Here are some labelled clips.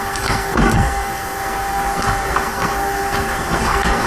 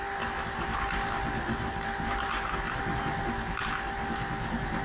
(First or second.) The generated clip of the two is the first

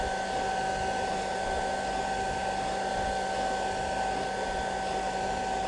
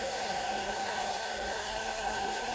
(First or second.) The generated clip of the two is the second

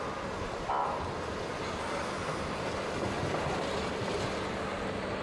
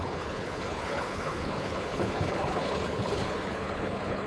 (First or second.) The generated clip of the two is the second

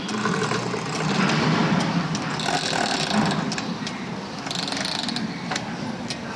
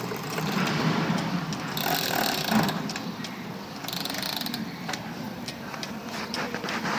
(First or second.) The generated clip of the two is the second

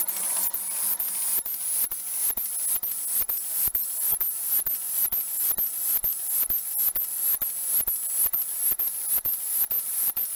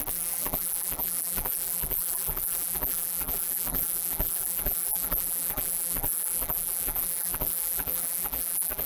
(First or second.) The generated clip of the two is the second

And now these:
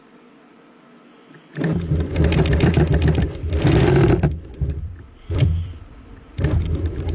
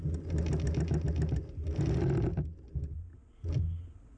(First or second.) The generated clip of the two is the first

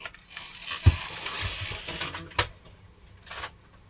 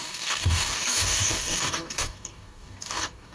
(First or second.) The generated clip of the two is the second